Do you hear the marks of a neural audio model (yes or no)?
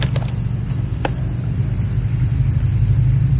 yes